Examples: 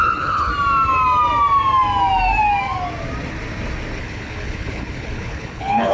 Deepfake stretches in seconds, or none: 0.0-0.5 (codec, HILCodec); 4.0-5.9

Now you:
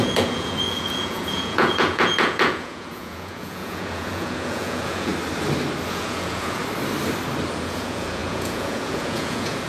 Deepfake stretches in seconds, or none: 0.0-5.1 (vocoder, Vocos); 5.9-6.6; 7.5-9.7

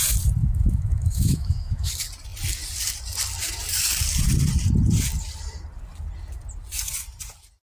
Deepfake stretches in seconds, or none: 0.4-1.9 (autoencoder, DAC-VAE)